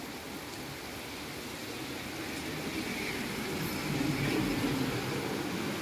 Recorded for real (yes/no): yes